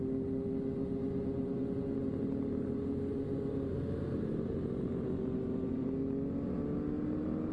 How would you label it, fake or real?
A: real